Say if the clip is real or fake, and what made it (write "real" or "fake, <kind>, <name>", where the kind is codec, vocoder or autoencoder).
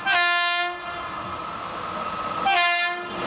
real